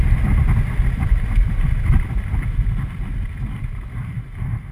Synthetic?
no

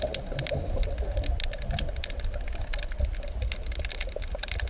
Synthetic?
no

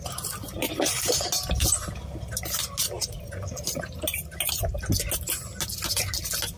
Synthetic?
no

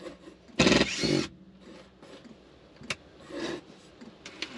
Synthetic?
no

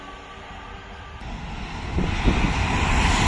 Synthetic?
no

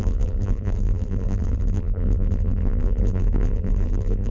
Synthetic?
yes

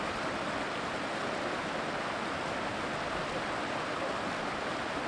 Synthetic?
no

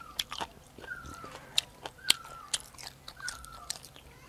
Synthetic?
yes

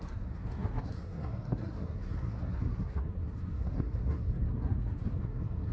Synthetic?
yes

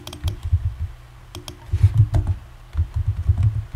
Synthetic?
no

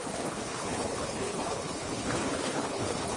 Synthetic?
yes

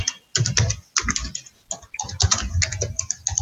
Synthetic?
no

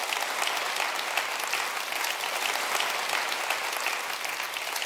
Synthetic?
no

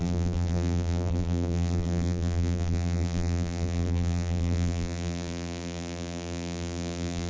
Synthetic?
yes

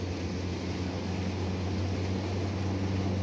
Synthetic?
no